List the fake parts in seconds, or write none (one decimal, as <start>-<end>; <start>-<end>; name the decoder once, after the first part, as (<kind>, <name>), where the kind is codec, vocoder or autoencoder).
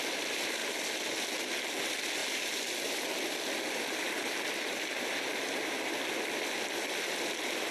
0.0-0.6 (vocoder, BigVGAN v2); 1.8-7.7